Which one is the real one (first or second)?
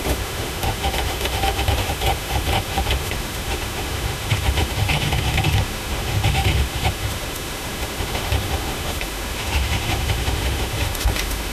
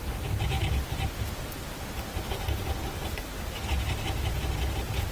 second